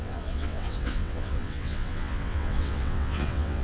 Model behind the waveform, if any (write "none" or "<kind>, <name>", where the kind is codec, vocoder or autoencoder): vocoder, WaveNeXt